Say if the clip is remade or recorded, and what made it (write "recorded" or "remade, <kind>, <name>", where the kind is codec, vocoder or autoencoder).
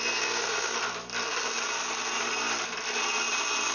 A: recorded